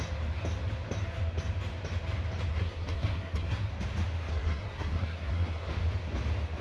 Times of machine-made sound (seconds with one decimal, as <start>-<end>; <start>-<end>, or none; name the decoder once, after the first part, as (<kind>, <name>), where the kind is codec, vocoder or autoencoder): 2.5-3.7 (codec, SNAC); 4.3-5.7